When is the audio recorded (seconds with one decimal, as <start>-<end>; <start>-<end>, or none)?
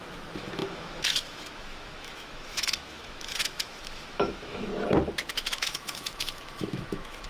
4.7-5.3